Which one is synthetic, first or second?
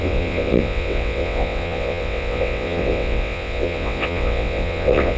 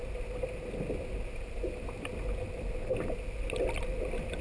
first